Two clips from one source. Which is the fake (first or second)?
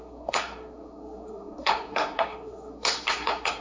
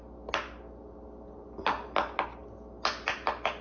first